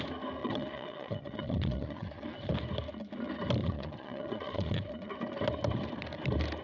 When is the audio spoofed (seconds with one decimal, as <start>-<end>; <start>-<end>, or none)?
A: 0.4-2.5; 3.6-5.1